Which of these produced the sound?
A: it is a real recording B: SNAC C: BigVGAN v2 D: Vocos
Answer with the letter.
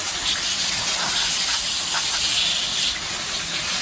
A